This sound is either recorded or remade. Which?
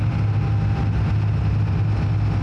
recorded